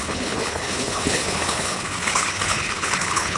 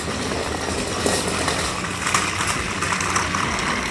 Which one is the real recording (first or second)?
second